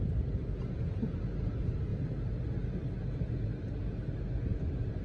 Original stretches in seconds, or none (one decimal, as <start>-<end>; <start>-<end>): 0.0-5.0